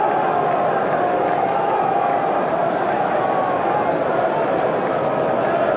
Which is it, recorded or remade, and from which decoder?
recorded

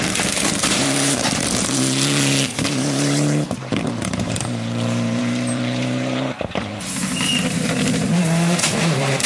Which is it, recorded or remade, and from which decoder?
remade, vocoder, BigVGAN v2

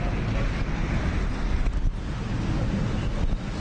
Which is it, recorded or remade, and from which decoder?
recorded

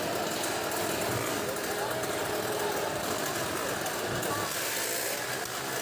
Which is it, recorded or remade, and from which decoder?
recorded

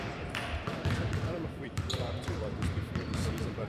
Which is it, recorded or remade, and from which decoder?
remade, vocoder, BigVGAN v2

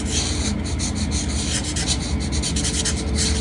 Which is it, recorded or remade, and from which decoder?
recorded